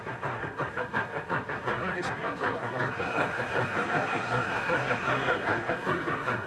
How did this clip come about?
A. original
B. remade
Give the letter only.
B